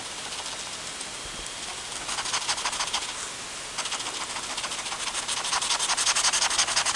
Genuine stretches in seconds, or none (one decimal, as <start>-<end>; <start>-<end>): 0.0-7.0